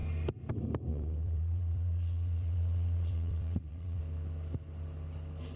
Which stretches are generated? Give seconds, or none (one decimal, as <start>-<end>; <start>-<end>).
0.9-4.0